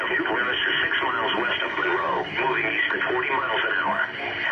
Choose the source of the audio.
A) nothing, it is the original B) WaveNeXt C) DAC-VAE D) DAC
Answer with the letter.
A